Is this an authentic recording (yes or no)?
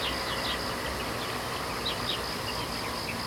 yes